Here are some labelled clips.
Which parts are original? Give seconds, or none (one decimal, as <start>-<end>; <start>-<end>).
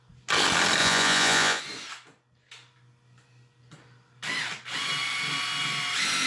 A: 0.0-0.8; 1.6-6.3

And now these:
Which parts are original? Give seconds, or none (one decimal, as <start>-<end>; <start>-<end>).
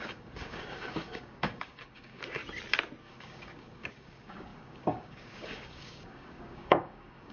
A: 2.4-3.0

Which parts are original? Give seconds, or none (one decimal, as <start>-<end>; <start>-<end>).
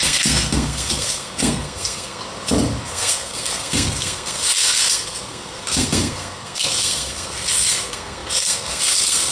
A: 2.2-2.8